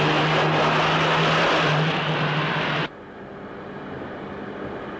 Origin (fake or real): real